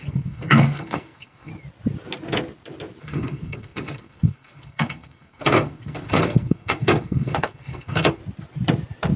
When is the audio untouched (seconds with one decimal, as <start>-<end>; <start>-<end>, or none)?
1.5-3.0; 8.2-9.2